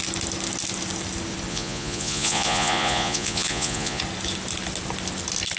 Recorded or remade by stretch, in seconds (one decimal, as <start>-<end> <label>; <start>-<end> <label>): 0.0-1.5 recorded; 1.5-4.0 remade; 4.0-5.6 recorded